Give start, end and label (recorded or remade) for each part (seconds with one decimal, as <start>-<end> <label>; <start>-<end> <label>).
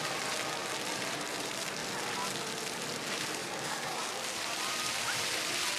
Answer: 0.0-3.4 recorded; 3.4-4.1 remade; 4.1-5.8 recorded